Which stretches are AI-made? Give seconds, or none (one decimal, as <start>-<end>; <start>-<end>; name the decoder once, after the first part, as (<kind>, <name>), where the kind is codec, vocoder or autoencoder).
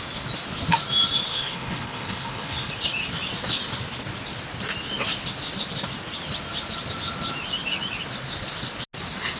1.3-2.7 (codec, HILCodec)